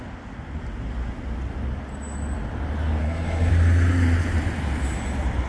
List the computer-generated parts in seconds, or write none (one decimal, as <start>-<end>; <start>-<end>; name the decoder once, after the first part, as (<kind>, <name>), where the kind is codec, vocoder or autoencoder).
3.0-3.5 (codec, SNAC)